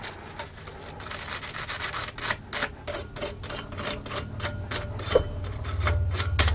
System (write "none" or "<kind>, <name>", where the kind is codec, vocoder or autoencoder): none